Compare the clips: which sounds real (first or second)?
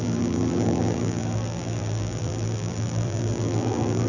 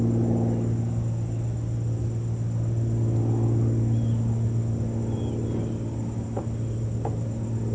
second